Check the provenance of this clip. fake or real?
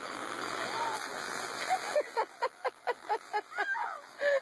fake